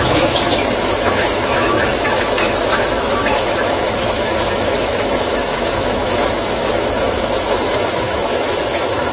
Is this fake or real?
fake